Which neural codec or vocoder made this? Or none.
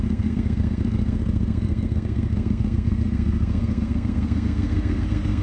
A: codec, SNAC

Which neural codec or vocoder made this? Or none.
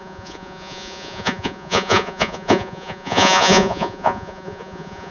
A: vocoder, Vocos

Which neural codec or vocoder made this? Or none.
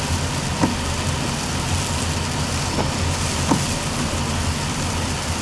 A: none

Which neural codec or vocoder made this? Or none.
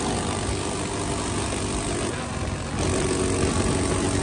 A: none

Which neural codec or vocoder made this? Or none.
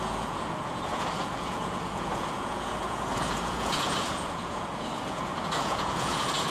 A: vocoder, Vocos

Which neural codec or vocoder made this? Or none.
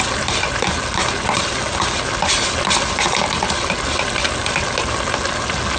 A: none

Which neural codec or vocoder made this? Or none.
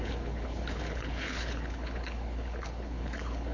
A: codec, HILCodec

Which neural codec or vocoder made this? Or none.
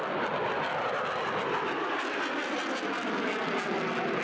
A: none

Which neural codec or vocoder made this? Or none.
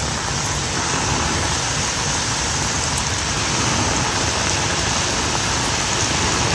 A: none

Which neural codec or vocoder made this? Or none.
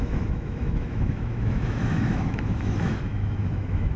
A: autoencoder, DAC-VAE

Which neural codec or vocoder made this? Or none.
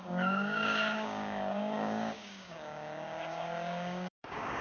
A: codec, DAC